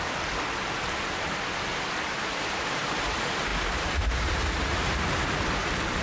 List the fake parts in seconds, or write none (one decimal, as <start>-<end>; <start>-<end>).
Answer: none